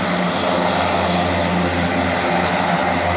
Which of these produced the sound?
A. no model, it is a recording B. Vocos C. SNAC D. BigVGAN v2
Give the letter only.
A